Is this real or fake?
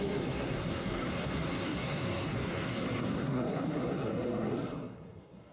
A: fake